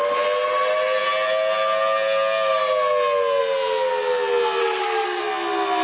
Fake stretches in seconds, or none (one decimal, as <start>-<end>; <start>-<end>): 4.6-5.2